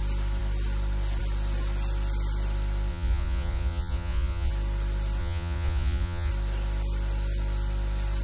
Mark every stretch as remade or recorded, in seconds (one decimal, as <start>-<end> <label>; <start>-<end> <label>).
0.0-2.9 recorded; 2.9-4.5 remade; 4.5-5.2 recorded; 5.2-6.3 remade; 6.3-8.2 recorded